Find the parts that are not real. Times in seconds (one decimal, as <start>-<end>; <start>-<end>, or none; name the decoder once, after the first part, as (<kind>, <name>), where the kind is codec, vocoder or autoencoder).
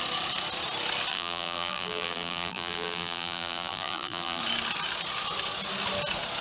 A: 1.1-4.4 (vocoder, BigVGAN v2)